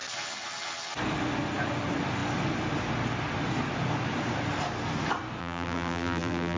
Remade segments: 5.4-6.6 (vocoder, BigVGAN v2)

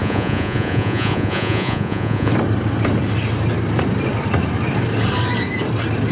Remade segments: 0.0-2.3 (vocoder, Vocos)

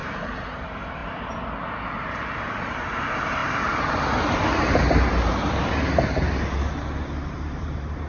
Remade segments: 0.0-0.6 (vocoder, BigVGAN v2); 3.4-8.1

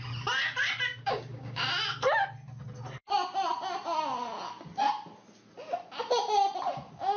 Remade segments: 0.9-1.6 (codec, DAC)

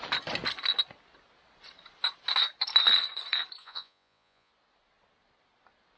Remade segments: 3.6-4.5 (vocoder, Vocos)

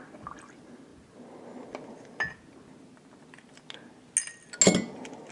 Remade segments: none

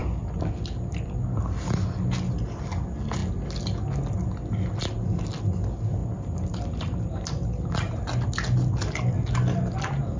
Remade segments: 0.0-2.0 (vocoder, BigVGAN v2)

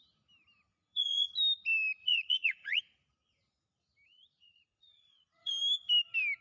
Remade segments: 0.7-1.3 (vocoder, Vocos); 2.0-2.8; 4.1-5.5